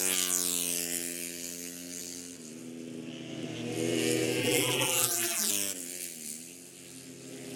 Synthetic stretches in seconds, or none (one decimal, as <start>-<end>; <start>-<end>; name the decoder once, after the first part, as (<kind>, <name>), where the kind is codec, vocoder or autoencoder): 4.4-5.5 (vocoder, BigVGAN v2)